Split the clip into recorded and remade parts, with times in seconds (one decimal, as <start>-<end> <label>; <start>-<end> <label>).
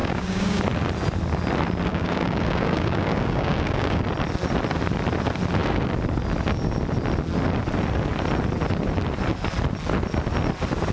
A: 0.0-0.6 remade; 0.6-1.9 recorded; 1.9-4.0 remade; 4.0-10.9 recorded